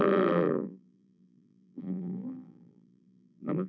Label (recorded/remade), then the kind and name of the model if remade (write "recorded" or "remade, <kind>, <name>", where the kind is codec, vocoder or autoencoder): remade, vocoder, BigVGAN v2